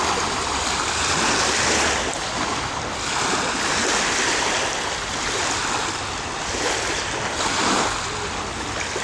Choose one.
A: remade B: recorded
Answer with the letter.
B